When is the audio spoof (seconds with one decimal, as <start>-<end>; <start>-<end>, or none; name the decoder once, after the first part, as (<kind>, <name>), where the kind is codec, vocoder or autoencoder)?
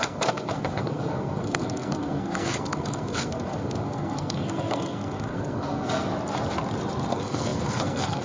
0.0-6.1 (codec, SNAC); 7.1-8.2